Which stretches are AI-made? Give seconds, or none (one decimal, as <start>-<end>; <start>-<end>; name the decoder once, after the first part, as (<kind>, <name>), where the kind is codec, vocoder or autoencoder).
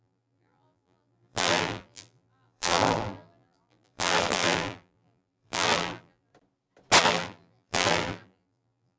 0.0-6.3 (vocoder, BigVGAN v2); 7.0-9.0